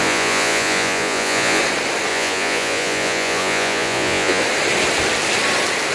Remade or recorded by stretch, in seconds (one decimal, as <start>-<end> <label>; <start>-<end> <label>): 0.0-1.6 remade; 1.6-2.1 recorded; 2.1-4.4 remade; 4.4-5.9 recorded